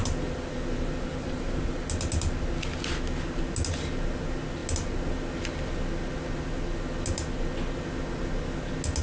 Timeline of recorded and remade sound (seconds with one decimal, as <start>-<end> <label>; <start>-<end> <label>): 0.0-1.1 recorded; 1.1-1.7 remade; 1.7-9.0 recorded